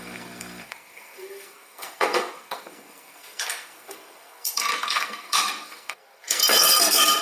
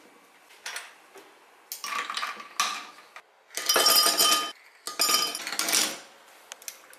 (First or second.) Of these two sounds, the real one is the second